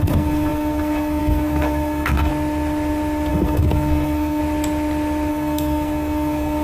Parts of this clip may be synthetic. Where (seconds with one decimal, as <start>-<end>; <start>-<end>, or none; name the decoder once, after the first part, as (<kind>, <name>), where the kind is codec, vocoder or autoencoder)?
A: 0.0-2.3 (codec, SNAC); 3.3-4.4; 5.3-6.6